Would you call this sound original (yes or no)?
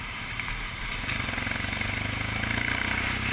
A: yes